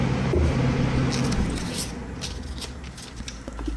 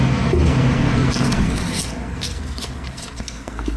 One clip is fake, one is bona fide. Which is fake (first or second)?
second